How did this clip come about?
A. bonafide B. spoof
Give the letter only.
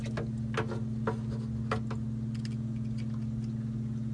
A